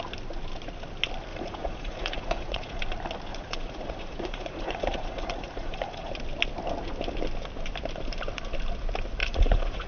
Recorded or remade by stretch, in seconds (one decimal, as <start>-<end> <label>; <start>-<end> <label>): 0.0-1.3 recorded; 1.3-2.8 remade; 2.8-3.3 recorded; 3.3-6.1 remade; 6.1-9.2 recorded; 9.2-9.9 remade